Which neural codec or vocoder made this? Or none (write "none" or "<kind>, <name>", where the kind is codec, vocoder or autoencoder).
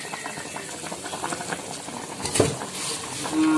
none